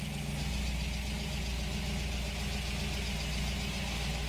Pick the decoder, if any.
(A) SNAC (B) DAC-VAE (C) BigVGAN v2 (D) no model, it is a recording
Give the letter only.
D